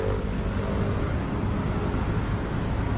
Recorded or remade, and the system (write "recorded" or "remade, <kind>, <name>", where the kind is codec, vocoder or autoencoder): recorded